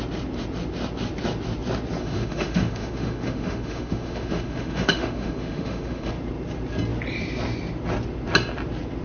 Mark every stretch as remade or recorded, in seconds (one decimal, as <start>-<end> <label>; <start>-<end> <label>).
0.0-2.0 recorded; 2.0-6.1 remade; 6.1-9.0 recorded